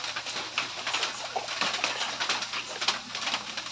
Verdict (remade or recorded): recorded